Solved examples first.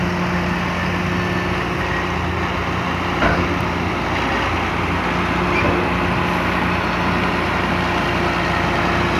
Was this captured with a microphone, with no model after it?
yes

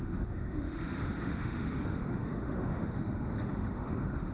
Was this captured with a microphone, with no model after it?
no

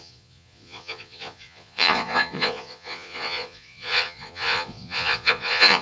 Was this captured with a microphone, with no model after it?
no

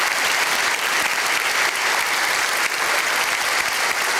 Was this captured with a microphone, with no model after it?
yes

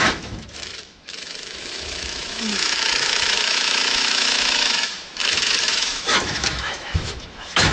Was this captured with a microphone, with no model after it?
no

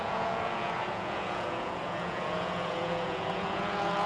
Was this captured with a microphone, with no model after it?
no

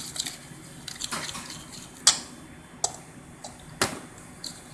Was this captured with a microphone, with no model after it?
yes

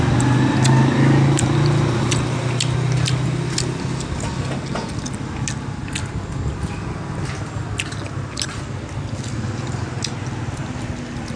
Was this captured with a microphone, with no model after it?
yes